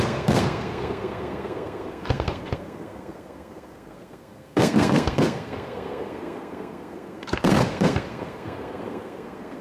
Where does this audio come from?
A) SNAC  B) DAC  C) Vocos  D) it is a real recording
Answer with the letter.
A